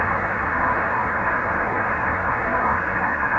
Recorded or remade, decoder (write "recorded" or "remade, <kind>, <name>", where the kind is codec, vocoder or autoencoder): remade, codec, SNAC